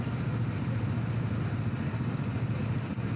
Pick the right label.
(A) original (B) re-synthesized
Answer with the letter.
A